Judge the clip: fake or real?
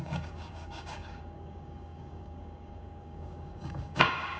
fake